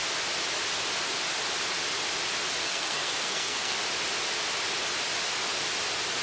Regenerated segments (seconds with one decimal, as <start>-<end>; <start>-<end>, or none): 2.6-3.8